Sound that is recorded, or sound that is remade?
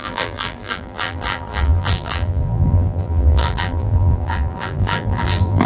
remade